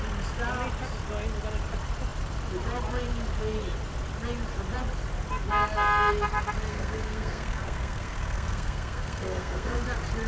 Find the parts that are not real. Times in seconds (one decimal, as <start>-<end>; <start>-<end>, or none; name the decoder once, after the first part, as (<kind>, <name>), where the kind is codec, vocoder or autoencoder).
6.7-9.8 (codec, SNAC)